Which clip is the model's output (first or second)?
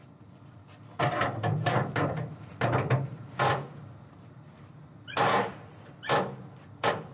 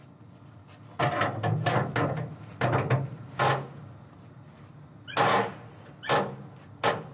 first